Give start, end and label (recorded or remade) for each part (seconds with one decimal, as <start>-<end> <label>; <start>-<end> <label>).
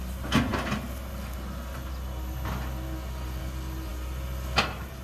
0.0-5.0 recorded